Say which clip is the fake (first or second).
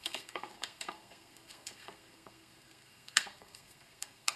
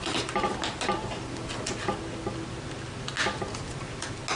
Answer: first